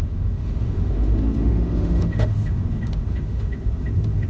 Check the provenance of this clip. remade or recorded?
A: remade